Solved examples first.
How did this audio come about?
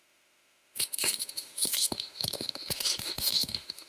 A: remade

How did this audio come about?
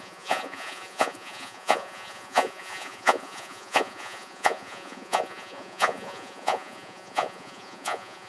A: remade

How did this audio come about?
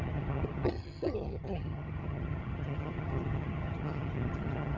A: remade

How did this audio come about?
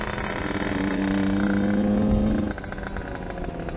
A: recorded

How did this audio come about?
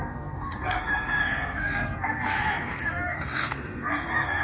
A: remade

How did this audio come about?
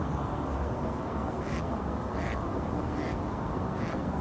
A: remade